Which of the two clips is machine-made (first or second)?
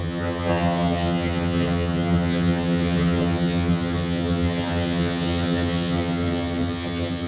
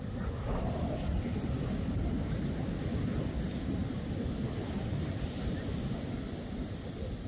first